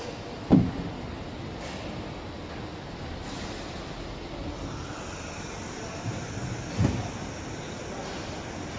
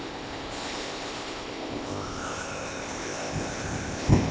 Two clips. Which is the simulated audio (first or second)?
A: second